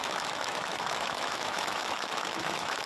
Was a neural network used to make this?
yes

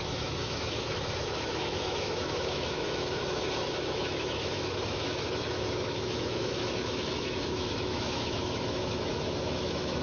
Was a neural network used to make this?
yes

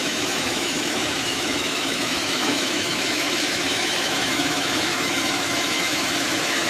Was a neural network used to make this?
yes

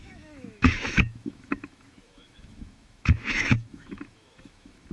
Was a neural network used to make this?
yes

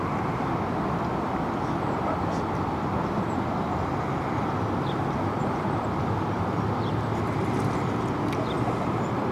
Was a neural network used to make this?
no